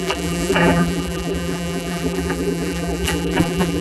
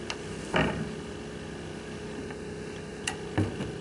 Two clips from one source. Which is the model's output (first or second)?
first